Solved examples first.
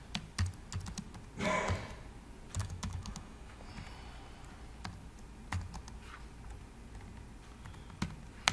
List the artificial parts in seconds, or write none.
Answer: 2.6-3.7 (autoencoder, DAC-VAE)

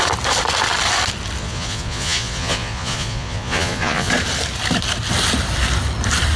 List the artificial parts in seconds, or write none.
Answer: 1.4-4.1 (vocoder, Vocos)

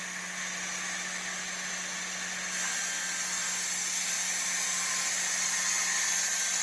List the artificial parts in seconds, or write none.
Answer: none

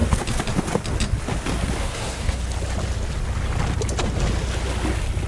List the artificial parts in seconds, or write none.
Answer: 1.8-2.4 (codec, SNAC)

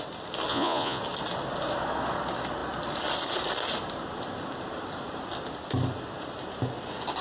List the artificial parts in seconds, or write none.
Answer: 0.5-1.0 (vocoder, Vocos)

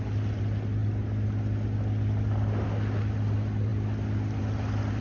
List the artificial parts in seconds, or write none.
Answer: none

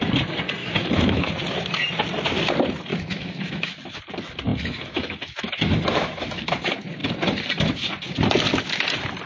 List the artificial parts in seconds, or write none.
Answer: 0.6-1.3 (autoencoder, DAC-VAE); 2.9-4.0; 4.5-6.5